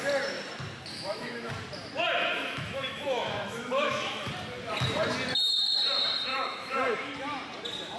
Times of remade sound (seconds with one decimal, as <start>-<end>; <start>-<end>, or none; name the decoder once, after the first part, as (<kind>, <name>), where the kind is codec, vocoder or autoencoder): 0.9-1.5 (autoencoder, DAC-VAE); 2.2-4.3; 6.3-7.1